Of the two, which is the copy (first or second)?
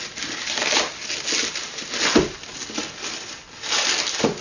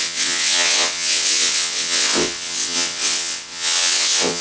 second